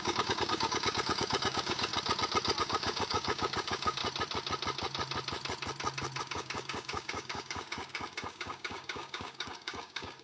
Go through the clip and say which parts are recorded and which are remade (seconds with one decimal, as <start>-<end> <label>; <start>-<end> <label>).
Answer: 0.0-1.9 remade; 1.9-2.6 recorded; 2.6-4.0 remade; 4.0-6.2 recorded; 6.2-10.2 remade